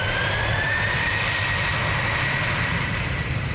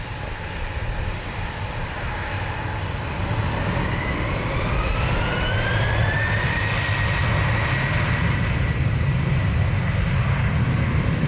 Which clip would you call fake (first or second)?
first